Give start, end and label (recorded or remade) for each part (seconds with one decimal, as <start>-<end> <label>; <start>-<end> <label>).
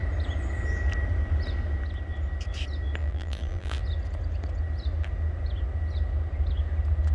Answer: 0.0-3.0 recorded; 3.0-3.8 remade; 3.8-7.1 recorded